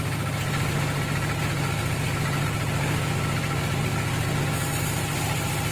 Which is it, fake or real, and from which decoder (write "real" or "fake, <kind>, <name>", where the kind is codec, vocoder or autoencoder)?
real